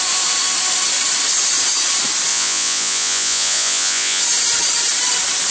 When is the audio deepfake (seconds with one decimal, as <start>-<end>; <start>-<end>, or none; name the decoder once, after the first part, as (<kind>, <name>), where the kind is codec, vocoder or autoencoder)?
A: 2.3-4.2 (vocoder, Vocos)